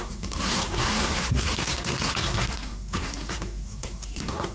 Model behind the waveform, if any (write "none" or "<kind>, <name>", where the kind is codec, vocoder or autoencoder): codec, SNAC